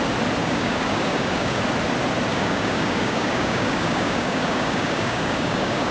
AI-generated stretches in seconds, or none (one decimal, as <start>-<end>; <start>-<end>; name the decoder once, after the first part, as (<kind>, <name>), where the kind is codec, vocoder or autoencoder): 0.4-1.6 (codec, DAC); 2.3-5.9